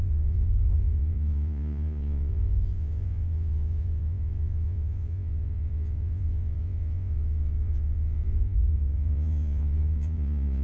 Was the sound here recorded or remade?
remade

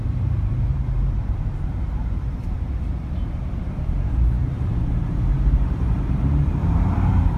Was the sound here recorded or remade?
remade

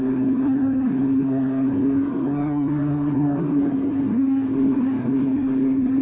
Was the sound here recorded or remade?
remade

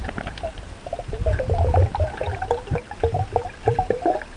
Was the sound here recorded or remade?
remade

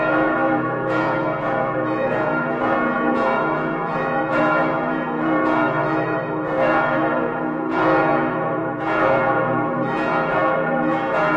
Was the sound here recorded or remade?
remade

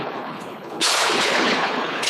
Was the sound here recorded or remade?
remade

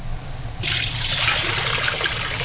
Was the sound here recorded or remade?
recorded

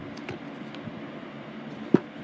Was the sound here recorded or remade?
recorded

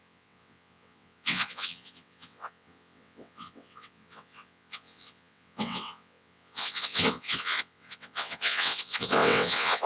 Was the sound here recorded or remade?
remade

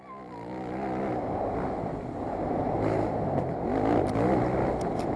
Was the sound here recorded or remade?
recorded